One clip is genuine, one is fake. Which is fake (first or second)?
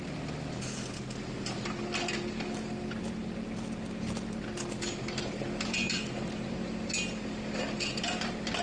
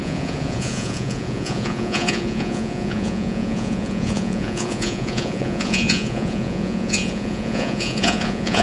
second